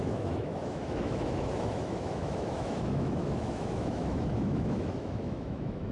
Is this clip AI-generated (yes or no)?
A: yes